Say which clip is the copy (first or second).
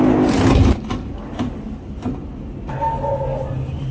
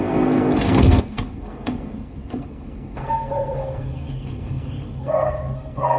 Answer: second